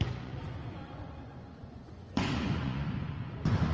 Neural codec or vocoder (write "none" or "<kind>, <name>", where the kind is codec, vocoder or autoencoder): vocoder, Vocos